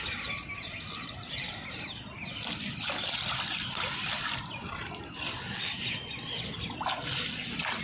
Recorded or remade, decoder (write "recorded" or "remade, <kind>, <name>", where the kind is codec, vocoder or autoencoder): recorded